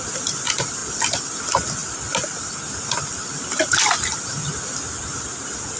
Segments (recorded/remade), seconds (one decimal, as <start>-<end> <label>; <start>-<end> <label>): 0.0-5.8 recorded